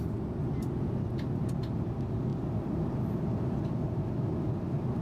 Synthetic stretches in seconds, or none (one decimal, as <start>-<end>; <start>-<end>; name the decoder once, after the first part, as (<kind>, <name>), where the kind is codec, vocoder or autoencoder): none